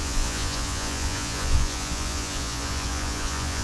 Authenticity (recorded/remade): remade